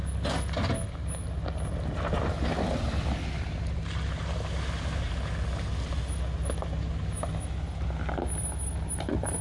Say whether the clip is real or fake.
real